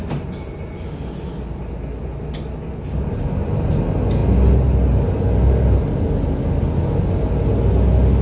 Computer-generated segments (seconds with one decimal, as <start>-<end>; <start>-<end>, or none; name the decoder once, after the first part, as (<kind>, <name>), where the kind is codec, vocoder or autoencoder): none